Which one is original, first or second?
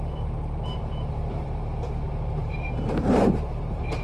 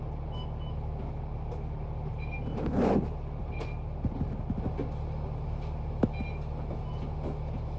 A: second